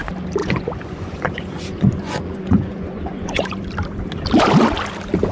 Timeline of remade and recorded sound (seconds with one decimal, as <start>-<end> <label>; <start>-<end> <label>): 0.0-0.4 recorded; 0.4-3.6 remade; 3.6-5.3 recorded